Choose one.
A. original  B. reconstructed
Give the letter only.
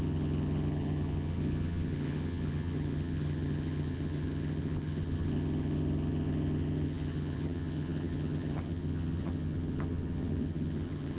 B